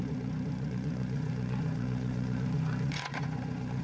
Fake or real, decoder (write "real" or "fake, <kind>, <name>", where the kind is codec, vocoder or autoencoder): fake, vocoder, Vocos